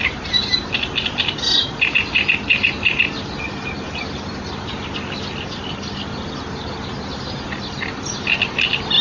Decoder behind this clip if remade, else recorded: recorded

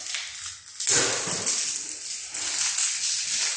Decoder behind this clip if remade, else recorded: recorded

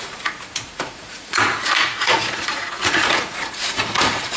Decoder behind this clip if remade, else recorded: remade, vocoder, Vocos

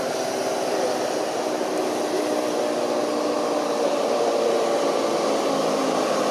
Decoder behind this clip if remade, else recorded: recorded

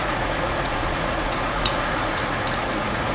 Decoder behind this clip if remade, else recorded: remade, vocoder, Vocos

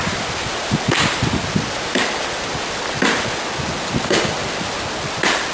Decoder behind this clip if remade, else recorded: recorded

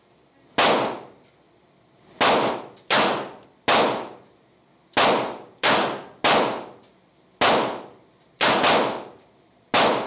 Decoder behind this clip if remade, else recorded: recorded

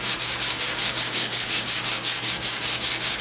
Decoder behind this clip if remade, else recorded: remade, codec, DAC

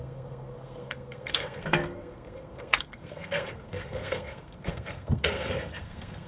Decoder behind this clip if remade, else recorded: remade, codec, SNAC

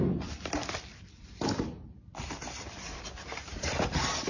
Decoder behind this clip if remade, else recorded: remade, vocoder, BigVGAN v2